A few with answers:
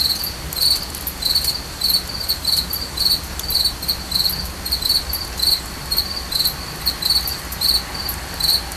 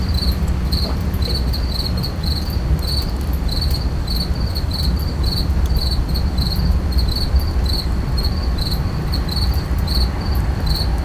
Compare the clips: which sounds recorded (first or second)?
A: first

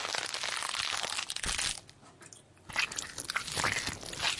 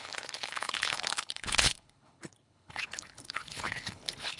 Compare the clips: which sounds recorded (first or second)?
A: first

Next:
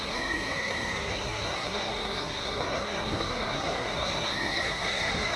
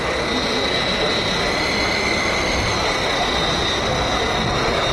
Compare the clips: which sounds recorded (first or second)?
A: second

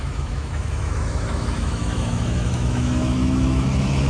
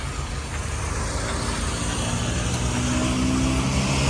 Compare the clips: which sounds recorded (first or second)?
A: second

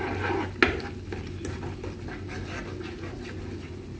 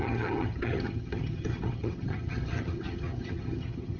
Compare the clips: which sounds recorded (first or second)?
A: first